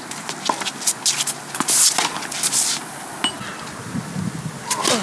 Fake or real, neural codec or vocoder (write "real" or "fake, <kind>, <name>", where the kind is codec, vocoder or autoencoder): real